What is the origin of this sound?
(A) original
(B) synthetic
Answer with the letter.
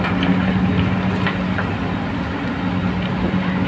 A